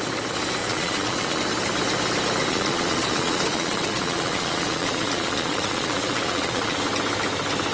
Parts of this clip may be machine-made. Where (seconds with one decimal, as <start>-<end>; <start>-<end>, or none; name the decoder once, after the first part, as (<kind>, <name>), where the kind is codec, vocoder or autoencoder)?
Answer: 0.6-1.4 (vocoder, Vocos); 2.5-6.8